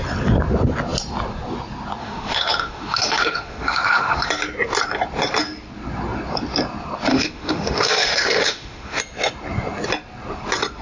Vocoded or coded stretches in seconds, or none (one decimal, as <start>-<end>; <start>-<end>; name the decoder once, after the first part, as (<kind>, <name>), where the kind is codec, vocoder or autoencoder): 2.0-4.3 (autoencoder, DAC-VAE); 7.1-9.0

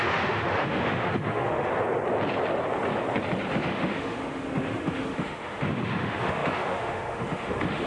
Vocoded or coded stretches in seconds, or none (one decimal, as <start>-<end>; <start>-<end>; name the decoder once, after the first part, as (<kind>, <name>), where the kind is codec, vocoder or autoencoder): 0.0-1.7 (autoencoder, DAC-VAE); 3.5-7.9

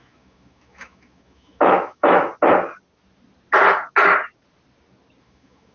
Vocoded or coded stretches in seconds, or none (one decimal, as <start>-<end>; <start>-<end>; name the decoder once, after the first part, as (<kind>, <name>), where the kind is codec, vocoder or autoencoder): 0.0-2.3 (autoencoder, DAC-VAE); 5.2-5.7

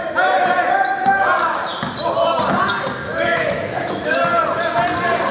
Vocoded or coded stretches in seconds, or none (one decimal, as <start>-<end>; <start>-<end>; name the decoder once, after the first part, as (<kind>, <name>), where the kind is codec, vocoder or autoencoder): 3.0-4.2 (autoencoder, DAC-VAE)

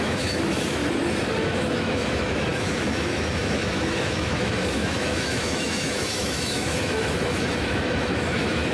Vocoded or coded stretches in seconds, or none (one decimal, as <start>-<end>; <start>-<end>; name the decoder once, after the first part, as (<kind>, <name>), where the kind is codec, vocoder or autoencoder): 0.0-0.8 (autoencoder, DAC-VAE); 1.4-8.7